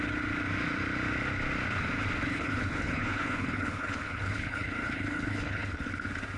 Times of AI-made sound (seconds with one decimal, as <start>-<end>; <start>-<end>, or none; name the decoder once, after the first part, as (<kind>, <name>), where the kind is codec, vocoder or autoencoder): 2.3-5.9 (codec, HILCodec)